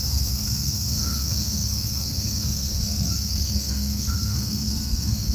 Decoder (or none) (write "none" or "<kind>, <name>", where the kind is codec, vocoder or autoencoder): codec, SNAC